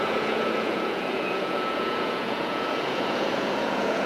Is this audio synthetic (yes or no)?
yes